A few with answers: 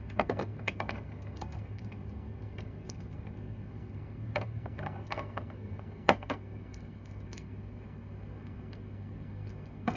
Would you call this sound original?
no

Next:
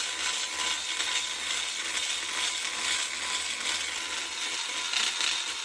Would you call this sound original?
yes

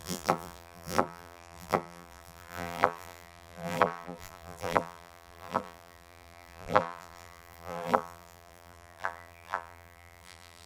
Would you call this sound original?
no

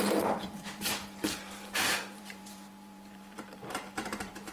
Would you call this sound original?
no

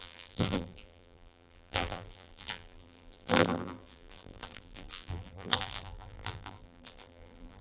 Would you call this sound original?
no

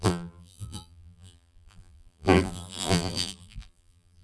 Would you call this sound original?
no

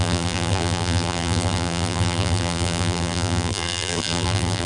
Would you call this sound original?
no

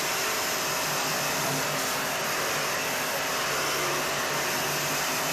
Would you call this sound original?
yes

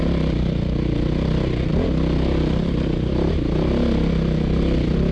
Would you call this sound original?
yes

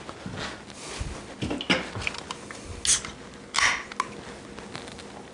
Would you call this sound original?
yes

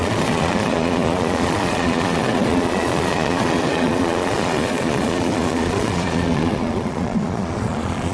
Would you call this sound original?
no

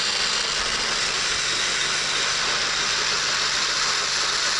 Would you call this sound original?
yes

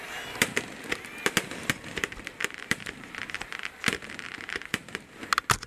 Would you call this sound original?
yes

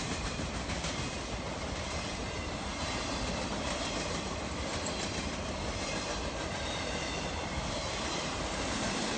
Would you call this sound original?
yes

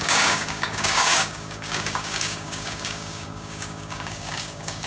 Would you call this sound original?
no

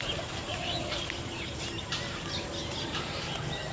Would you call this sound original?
no